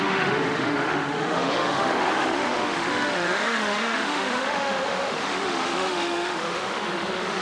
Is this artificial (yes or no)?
yes